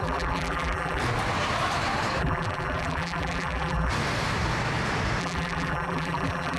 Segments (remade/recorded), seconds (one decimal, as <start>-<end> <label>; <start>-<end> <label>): 0.0-1.0 remade; 1.0-2.2 recorded; 2.2-3.9 remade; 3.9-5.2 recorded; 5.2-6.6 remade